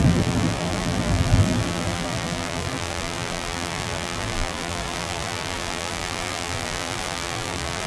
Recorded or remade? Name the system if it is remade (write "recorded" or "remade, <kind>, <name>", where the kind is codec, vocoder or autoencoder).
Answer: remade, vocoder, BigVGAN v2